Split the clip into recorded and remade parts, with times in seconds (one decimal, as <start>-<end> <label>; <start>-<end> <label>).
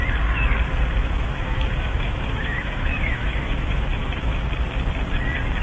0.0-1.0 recorded; 1.0-4.4 remade; 4.4-5.6 recorded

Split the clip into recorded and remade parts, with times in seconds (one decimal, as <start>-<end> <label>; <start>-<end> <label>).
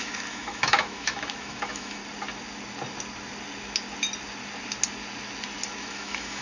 0.0-2.0 remade; 2.0-5.8 recorded; 5.8-6.4 remade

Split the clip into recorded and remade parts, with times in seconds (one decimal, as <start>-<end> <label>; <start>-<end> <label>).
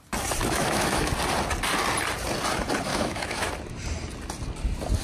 0.0-0.4 recorded; 0.4-1.1 remade; 1.1-2.9 recorded; 2.9-3.5 remade; 3.5-5.0 recorded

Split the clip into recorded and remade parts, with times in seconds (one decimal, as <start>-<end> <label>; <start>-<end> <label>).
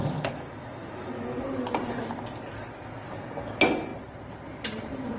0.0-1.1 remade; 1.1-5.2 recorded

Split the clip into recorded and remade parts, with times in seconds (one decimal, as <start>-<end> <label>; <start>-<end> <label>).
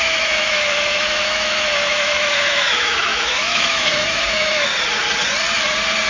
0.0-4.7 remade; 4.7-6.1 recorded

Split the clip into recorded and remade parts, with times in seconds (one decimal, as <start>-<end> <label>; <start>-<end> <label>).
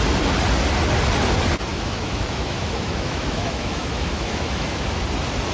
0.0-1.7 recorded; 1.7-5.0 remade; 5.0-5.5 recorded